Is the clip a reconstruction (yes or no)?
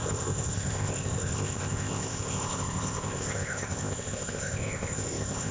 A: yes